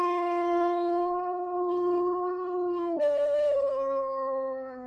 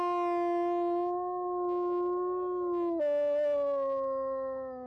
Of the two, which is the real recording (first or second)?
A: second